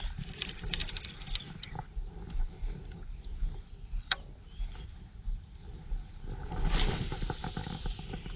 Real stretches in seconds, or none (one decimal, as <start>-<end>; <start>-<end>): 0.0-8.4

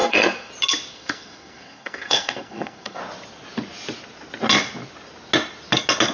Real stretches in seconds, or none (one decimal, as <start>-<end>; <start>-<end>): 0.5-0.9; 3.0-6.1